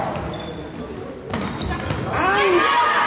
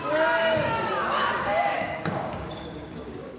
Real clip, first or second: first